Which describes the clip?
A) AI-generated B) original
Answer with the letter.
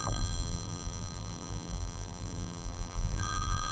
A